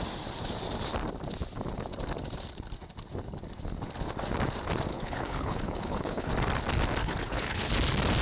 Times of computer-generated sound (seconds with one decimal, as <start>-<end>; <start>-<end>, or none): 4.9-6.3; 7.0-7.7